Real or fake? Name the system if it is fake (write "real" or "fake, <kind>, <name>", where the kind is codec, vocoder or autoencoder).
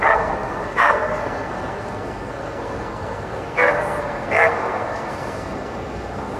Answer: fake, codec, SNAC